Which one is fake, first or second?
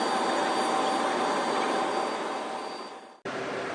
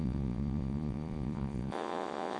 second